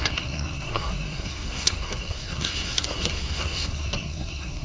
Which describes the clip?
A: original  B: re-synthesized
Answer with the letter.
B